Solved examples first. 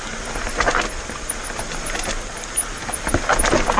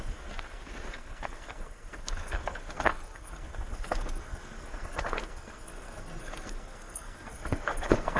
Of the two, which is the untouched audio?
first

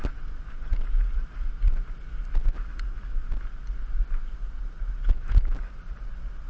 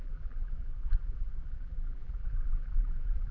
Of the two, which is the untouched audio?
first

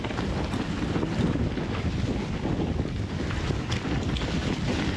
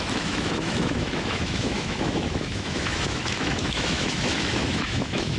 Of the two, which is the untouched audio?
first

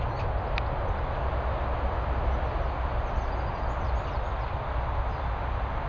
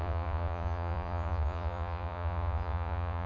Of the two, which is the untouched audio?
first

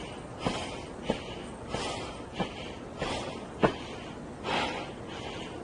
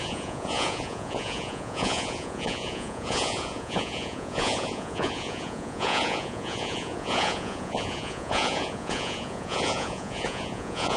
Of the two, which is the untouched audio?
first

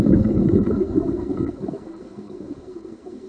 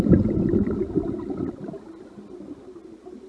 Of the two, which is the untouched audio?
second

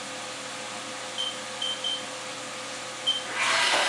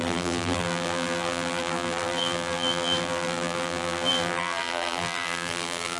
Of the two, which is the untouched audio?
first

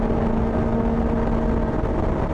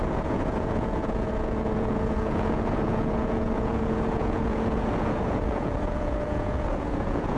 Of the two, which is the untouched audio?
first